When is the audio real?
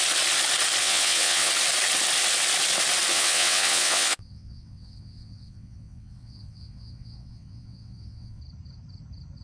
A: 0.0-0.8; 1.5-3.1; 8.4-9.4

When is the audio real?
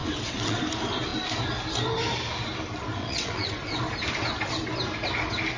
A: 0.6-3.0; 3.8-5.6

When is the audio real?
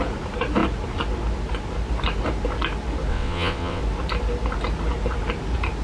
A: 0.0-3.1; 3.8-5.8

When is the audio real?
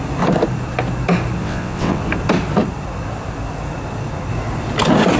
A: 0.0-1.4; 2.0-5.2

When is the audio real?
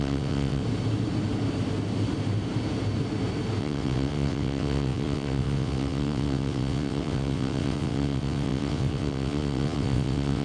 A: 0.6-3.6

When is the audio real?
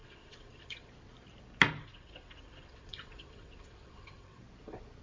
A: 0.9-1.8; 4.4-5.0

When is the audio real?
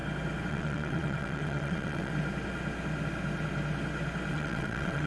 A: 0.0-0.5; 2.1-4.3